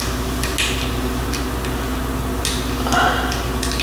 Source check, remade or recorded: recorded